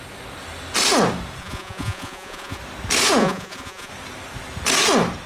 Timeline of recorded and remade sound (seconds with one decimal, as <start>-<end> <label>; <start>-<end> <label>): 0.0-1.4 recorded; 1.4-2.6 remade; 2.6-3.2 recorded; 3.2-3.9 remade; 3.9-5.3 recorded